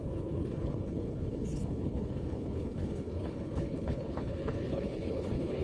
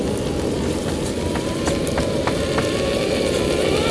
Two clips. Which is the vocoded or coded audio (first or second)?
first